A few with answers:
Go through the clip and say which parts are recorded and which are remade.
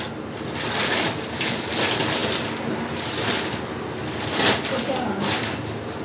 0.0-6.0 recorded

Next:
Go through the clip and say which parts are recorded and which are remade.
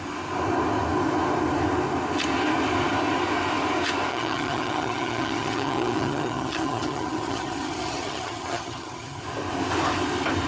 0.0-4.1 recorded; 4.1-9.2 remade; 9.2-10.5 recorded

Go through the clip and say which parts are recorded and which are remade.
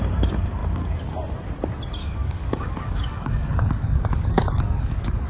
0.0-2.0 recorded; 2.0-5.3 remade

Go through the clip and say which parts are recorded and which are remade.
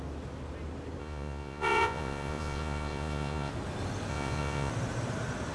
0.0-1.0 recorded; 1.0-3.5 remade; 3.5-4.1 recorded; 4.1-4.7 remade; 4.7-5.5 recorded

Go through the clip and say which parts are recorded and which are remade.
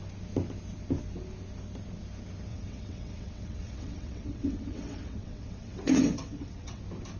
0.0-2.5 recorded; 2.5-6.8 remade; 6.8-7.2 recorded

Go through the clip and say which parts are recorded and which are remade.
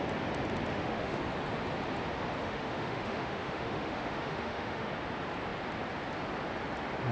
0.0-0.7 recorded; 0.7-1.2 remade; 1.2-2.4 recorded; 2.4-4.9 remade; 4.9-7.1 recorded